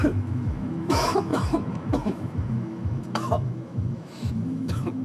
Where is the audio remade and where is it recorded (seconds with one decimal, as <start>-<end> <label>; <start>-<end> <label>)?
0.0-5.0 remade